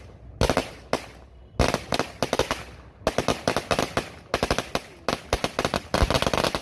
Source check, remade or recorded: recorded